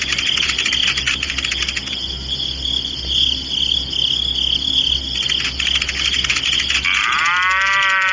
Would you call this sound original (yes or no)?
yes